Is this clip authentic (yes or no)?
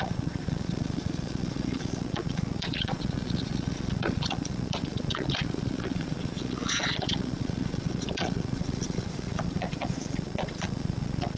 no